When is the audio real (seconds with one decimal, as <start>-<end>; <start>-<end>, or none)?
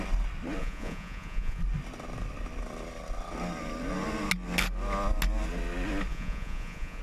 0.0-0.6; 1.6-6.1